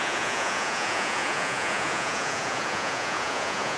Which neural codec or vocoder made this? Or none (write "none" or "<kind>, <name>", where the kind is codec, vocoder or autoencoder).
vocoder, Vocos